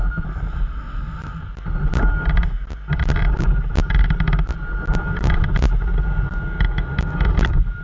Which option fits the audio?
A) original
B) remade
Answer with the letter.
A